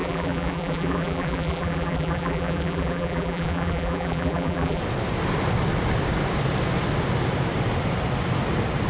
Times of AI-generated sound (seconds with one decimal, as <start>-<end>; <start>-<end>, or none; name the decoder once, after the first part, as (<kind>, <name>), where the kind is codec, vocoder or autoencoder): 0.0-4.8 (vocoder, BigVGAN v2)